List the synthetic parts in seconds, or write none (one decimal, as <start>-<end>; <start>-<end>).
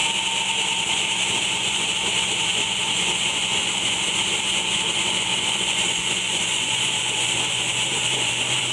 0.8-8.7